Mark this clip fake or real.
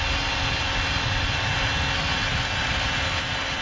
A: real